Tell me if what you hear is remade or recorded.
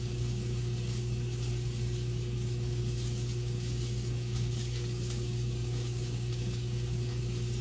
remade